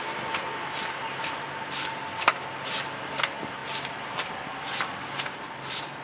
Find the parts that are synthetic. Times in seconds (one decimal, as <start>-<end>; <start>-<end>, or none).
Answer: none